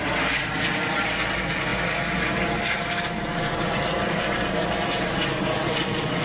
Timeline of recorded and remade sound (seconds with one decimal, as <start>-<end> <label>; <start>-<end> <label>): 0.0-6.2 recorded